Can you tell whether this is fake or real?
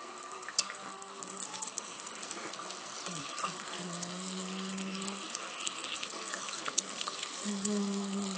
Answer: fake